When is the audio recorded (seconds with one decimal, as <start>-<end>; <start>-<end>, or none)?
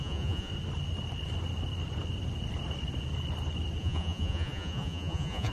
0.5-3.8